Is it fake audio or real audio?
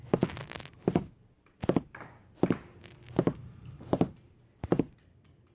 real